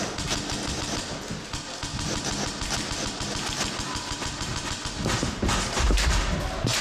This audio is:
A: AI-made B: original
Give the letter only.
B